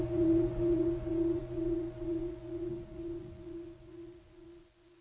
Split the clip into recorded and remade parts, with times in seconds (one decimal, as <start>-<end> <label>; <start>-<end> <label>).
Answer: 0.0-5.0 remade

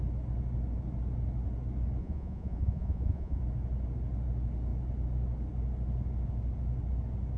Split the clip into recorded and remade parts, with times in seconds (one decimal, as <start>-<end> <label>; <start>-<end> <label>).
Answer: 0.0-2.0 recorded; 2.0-3.4 remade; 3.4-7.4 recorded

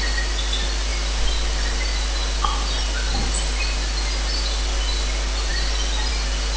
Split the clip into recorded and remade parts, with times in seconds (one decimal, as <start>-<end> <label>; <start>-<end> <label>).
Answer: 0.0-6.6 recorded

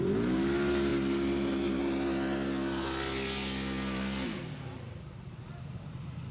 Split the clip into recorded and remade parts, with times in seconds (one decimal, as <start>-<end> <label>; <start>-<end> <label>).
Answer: 0.0-6.3 recorded

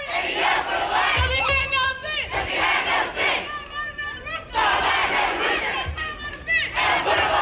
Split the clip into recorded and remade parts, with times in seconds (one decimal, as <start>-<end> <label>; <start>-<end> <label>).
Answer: 0.0-5.0 recorded; 5.0-5.6 remade; 5.6-7.4 recorded